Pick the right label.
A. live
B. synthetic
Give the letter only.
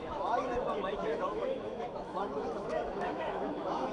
B